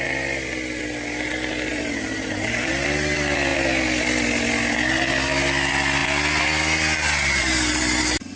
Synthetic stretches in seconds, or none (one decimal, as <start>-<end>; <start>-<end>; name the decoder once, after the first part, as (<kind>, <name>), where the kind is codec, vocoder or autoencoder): 1.7-2.7 (vocoder, BigVGAN v2)